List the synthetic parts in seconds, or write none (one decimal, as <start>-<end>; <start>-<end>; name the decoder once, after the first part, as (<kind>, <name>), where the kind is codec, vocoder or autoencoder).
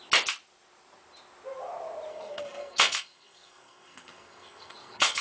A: 2.1-5.2 (codec, SNAC)